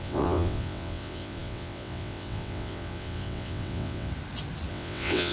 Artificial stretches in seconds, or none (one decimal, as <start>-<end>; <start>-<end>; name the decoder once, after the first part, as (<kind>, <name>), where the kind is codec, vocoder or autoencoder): 0.0-4.1 (vocoder, WaveNeXt); 4.7-5.3